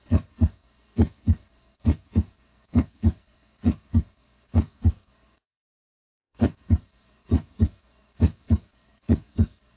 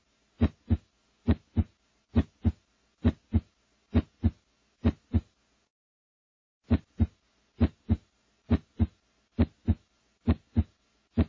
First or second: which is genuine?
second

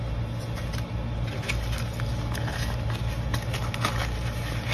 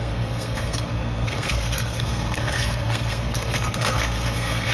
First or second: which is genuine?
first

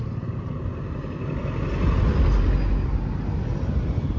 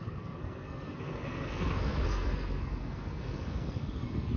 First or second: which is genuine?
first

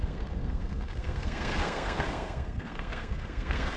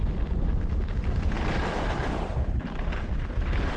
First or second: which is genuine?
second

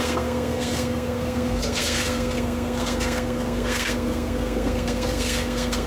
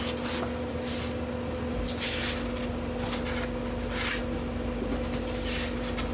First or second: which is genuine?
second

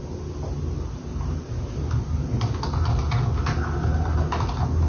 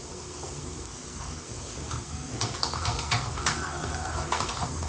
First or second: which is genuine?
first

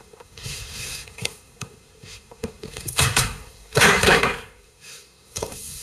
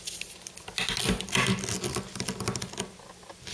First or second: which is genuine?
second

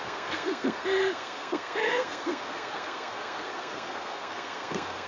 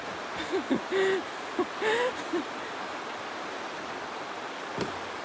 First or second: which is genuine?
second